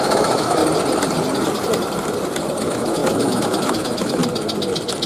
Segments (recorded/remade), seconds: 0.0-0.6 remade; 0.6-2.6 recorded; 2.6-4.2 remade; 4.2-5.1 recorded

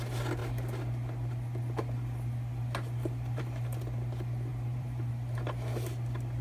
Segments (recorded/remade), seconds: 0.0-4.5 recorded; 4.5-5.1 remade; 5.1-6.4 recorded

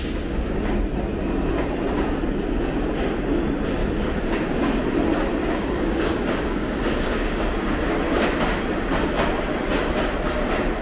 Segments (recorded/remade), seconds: 0.0-3.8 recorded; 3.8-4.8 remade; 4.8-5.3 recorded; 5.3-8.6 remade; 8.6-10.8 recorded

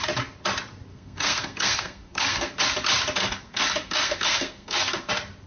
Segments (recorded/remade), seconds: 0.0-0.9 recorded; 0.9-2.6 remade; 2.6-3.2 recorded; 3.2-5.1 remade; 5.1-5.5 recorded

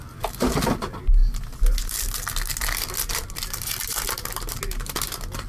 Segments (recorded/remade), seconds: 0.0-5.5 recorded

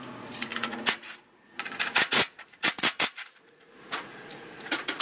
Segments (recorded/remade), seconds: 0.0-5.0 remade

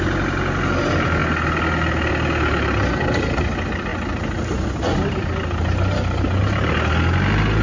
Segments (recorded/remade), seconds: 0.0-7.6 recorded

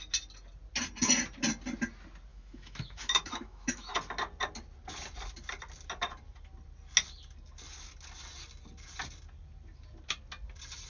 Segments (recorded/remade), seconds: 0.0-2.3 recorded; 2.3-3.9 remade; 3.9-10.9 recorded